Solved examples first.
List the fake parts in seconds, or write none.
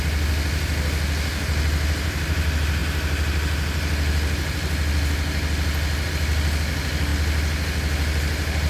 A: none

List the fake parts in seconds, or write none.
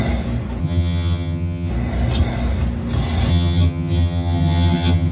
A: 0.6-1.7 (vocoder, HiFi-GAN); 3.3-5.1